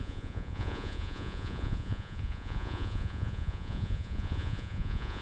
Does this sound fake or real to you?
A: fake